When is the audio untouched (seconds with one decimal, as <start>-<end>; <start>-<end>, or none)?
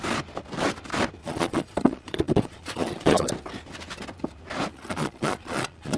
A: 0.0-1.2; 3.3-4.7